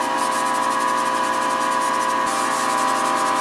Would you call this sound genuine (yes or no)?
yes